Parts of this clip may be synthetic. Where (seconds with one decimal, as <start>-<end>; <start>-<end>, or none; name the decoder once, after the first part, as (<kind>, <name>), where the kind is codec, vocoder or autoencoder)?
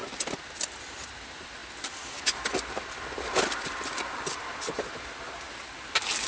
0.8-1.6 (vocoder, BigVGAN v2); 5.4-6.3